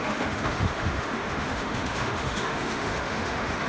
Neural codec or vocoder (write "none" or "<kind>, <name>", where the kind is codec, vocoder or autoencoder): autoencoder, DAC-VAE